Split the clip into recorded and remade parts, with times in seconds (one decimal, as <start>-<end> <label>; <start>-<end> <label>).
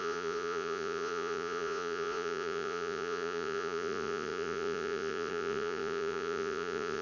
0.0-7.0 remade